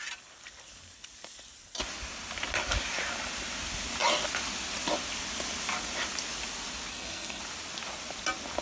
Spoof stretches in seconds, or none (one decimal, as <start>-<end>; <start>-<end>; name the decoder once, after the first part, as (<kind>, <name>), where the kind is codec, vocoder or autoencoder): 6.9-7.4 (codec, SNAC)